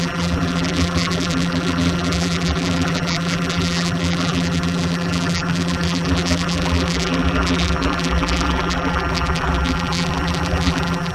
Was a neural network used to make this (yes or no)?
yes